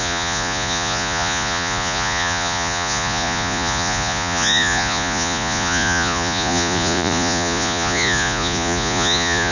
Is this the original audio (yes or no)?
no